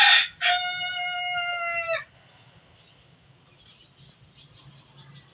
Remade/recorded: recorded